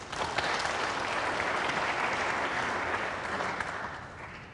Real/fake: real